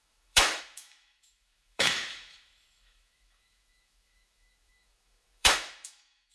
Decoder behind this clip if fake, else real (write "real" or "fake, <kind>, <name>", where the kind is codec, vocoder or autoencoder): fake, autoencoder, DAC-VAE